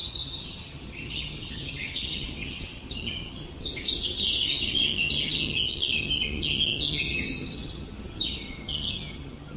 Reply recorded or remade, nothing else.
remade